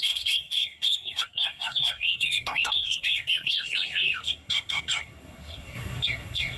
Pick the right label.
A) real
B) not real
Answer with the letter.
B